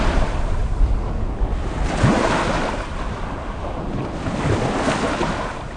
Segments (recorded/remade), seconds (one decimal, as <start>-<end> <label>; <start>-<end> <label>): 0.0-5.8 recorded